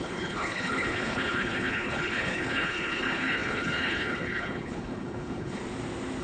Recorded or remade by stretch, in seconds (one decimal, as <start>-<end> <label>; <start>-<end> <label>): 0.0-5.6 remade; 5.6-6.2 recorded